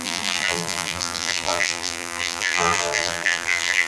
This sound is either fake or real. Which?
fake